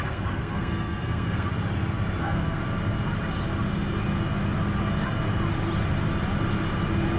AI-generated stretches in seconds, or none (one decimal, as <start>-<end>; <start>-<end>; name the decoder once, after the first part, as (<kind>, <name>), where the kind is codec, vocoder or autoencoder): 0.0-1.5 (codec, SNAC); 2.2-2.6